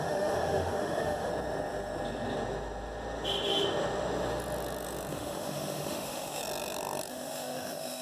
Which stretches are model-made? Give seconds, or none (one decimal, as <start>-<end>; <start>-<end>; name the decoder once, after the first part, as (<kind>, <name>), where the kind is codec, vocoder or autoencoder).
0.0-1.3 (autoencoder, DAC-VAE); 5.1-6.4; 7.1-8.0